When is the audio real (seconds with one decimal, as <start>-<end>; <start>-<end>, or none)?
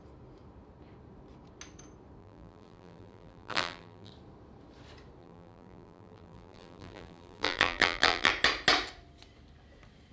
0.0-2.2; 4.1-5.2; 8.3-10.1